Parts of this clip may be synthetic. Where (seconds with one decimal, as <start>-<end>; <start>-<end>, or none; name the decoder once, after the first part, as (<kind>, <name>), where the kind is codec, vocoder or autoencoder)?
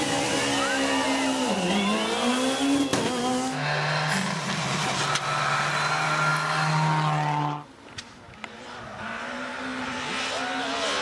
none